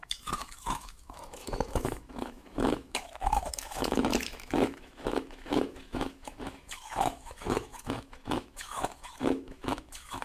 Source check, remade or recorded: remade